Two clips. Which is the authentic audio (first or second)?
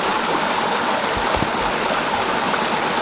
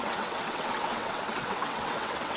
first